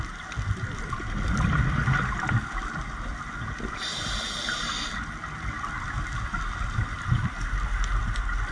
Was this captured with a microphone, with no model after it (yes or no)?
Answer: yes